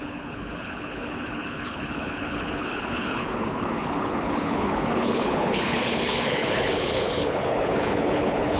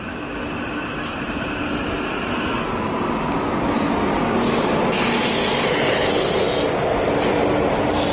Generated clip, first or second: first